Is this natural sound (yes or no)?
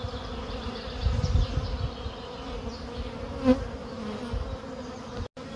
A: yes